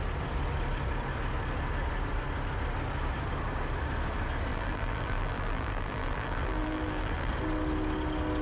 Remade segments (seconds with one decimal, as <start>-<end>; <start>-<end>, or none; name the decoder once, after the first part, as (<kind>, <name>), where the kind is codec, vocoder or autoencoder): 4.5-7.3 (vocoder, BigVGAN v2)